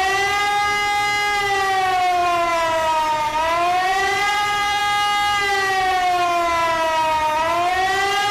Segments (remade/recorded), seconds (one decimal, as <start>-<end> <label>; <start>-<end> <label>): 0.0-2.2 recorded; 2.2-4.8 remade; 4.8-8.3 recorded

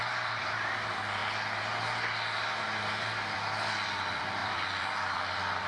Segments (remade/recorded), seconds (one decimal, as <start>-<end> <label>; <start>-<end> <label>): 0.0-1.2 remade; 1.2-2.6 recorded; 2.6-5.7 remade

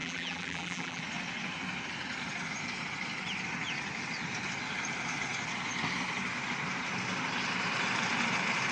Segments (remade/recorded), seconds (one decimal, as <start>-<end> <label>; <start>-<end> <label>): 0.0-1.0 remade; 1.0-8.7 recorded

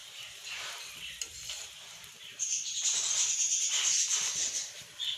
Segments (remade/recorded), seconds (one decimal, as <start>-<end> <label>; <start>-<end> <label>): 0.0-3.0 remade; 3.0-5.2 recorded

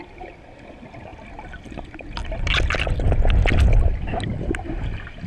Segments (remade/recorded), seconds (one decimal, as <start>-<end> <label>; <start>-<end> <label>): 0.0-5.3 recorded